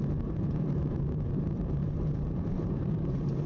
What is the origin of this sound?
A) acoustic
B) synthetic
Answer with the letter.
B